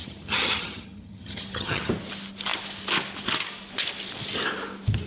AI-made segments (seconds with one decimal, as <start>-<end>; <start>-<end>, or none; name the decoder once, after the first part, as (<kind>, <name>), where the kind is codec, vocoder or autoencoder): 0.0-1.9 (vocoder, HiFi-GAN)